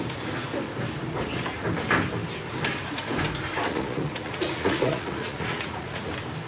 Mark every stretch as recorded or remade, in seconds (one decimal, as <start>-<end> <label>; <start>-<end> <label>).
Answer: 0.0-3.7 recorded; 3.7-6.1 remade; 6.1-6.5 recorded